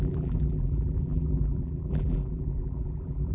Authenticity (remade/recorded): remade